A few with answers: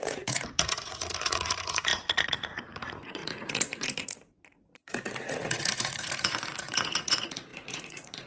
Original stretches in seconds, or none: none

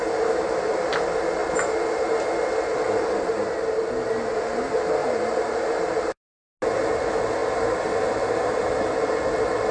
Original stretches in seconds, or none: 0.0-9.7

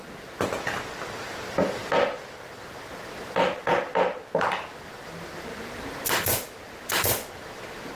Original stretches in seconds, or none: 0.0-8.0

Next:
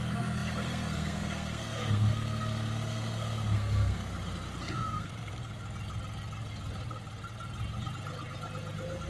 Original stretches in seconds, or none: 4.1-4.6; 5.4-9.1

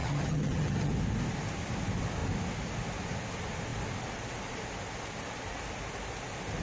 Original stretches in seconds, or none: 0.9-6.6

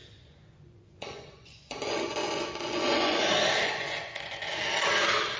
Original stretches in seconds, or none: 3.2-3.6; 4.6-5.4

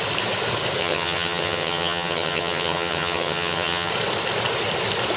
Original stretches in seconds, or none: 0.0-0.8; 3.9-5.2

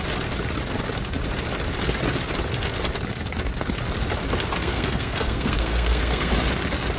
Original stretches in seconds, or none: 0.0-4.6; 6.3-7.0